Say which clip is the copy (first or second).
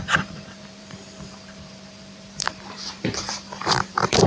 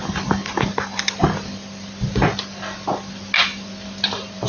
first